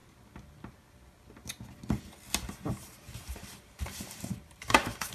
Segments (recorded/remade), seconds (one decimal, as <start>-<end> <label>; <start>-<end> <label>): 0.0-2.7 recorded; 2.7-5.1 remade